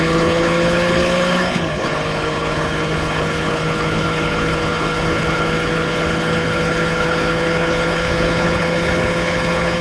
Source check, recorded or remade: remade